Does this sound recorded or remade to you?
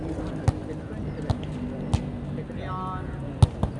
recorded